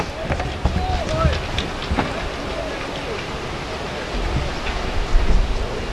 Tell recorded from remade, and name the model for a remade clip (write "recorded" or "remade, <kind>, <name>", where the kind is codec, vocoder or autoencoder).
recorded